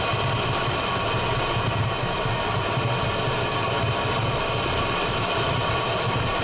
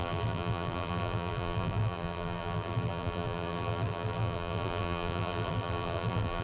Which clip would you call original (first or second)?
first